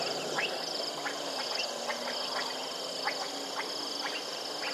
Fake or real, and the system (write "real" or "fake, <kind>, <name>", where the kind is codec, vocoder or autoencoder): real